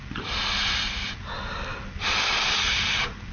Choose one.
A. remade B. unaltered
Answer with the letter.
B